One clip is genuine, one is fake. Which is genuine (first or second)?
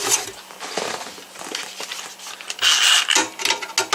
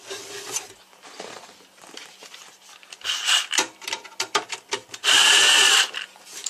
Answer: first